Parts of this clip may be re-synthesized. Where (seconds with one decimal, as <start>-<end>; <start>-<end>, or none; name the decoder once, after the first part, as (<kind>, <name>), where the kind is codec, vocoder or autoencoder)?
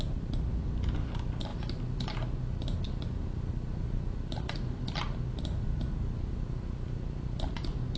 none